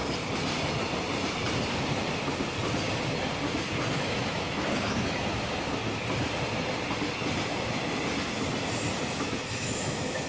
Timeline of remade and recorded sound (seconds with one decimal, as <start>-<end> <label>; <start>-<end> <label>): 0.0-3.9 recorded; 3.9-5.8 remade; 5.8-9.1 recorded; 9.1-10.3 remade